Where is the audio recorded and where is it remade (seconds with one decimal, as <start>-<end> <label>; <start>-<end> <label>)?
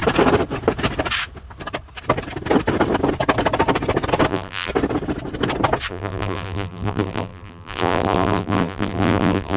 0.0-4.3 recorded; 4.3-4.7 remade; 4.7-5.9 recorded; 5.9-9.6 remade